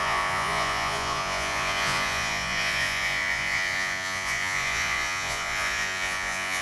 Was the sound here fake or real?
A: fake